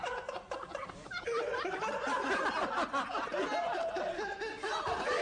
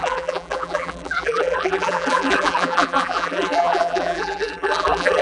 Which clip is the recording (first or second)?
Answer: first